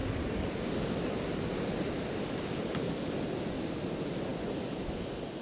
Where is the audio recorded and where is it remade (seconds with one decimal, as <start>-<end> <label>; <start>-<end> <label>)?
0.0-5.4 recorded